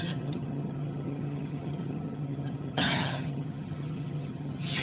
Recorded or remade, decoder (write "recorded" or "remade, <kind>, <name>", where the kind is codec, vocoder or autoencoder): remade, vocoder, HiFi-GAN